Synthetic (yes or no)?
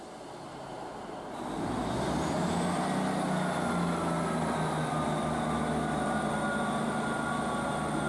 no